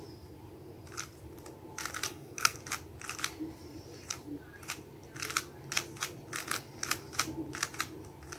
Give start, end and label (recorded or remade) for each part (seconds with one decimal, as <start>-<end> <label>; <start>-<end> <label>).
0.0-2.1 recorded; 2.1-2.6 remade; 2.6-8.4 recorded